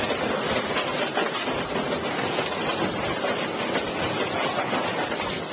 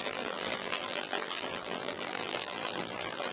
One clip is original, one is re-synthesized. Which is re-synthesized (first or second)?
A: second